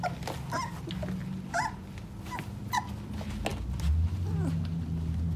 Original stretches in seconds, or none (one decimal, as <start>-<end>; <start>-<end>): 0.0-5.4